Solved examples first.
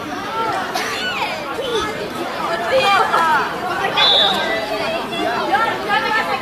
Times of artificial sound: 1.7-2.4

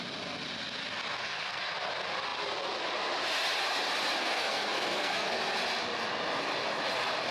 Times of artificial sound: 1.2-1.7; 4.2-5.4

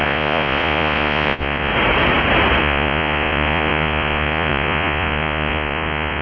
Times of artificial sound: 0.0-1.7; 2.6-6.2

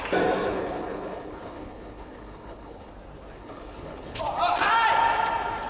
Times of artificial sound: 0.5-2.9; 3.4-4.2

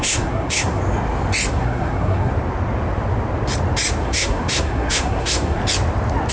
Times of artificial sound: 0.0-0.8; 1.5-2.3; 4.0-5.6